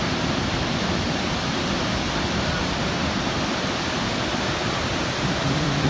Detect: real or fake fake